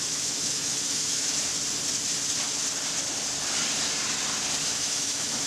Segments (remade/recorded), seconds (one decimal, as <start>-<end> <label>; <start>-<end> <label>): 0.0-1.5 remade; 1.5-4.6 recorded; 4.6-5.5 remade